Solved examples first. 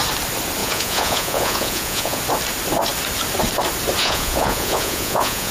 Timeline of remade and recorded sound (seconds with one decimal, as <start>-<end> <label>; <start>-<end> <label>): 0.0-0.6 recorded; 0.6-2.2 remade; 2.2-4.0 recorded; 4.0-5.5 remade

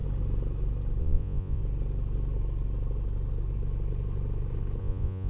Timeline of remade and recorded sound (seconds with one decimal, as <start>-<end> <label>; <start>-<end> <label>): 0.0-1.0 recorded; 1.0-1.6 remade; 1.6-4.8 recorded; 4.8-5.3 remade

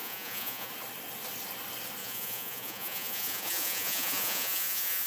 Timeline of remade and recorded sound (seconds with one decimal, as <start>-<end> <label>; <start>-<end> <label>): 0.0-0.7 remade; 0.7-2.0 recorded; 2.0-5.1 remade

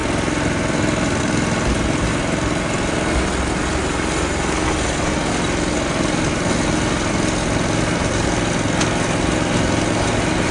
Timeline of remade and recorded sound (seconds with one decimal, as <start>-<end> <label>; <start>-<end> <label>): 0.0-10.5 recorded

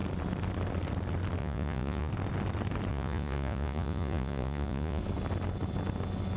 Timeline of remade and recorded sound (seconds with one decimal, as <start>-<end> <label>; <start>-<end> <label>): 0.0-1.4 recorded; 1.4-2.1 remade; 2.1-2.9 recorded; 2.9-5.0 remade; 5.0-6.4 recorded